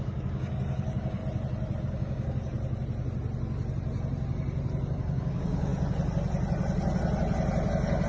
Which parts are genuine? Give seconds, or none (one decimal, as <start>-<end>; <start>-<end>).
1.2-1.8; 2.5-4.9; 5.7-8.1